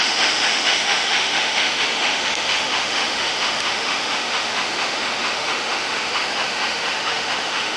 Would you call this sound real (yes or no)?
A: no